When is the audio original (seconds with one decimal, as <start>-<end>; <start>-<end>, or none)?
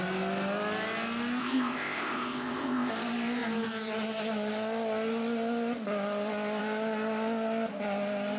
0.0-1.4; 2.9-8.4